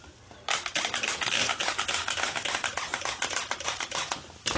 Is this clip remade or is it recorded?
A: recorded